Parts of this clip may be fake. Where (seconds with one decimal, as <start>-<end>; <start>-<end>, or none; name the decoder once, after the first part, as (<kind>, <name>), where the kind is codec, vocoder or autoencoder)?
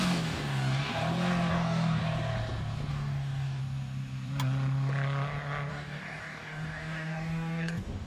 0.0-1.0 (codec, DAC); 1.5-2.0; 2.9-3.6; 5.7-8.1